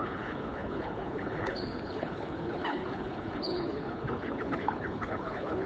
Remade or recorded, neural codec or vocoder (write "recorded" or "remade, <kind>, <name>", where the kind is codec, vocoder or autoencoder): remade, codec, HILCodec